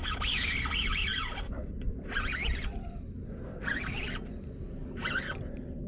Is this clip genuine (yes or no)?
yes